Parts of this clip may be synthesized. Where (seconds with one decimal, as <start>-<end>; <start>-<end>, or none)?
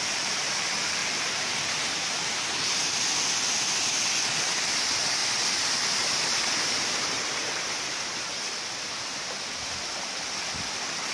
1.0-3.0; 5.2-8.6